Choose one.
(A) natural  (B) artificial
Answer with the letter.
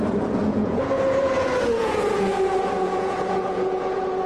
B